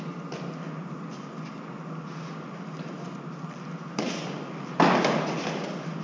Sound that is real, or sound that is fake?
real